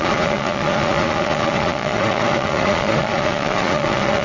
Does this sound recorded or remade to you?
remade